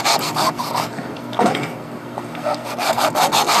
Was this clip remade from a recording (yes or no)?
yes